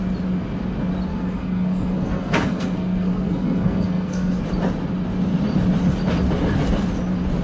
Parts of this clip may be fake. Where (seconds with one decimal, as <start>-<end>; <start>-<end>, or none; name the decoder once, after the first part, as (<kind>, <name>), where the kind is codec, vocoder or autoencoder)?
1.1-4.4 (codec, SNAC)